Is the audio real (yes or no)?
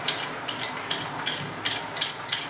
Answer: yes